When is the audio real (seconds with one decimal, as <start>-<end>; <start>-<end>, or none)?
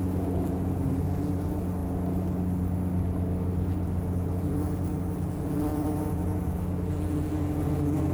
0.0-5.7; 6.5-8.1